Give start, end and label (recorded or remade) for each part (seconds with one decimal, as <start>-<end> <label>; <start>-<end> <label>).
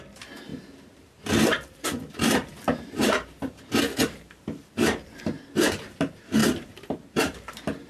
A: 0.0-7.9 remade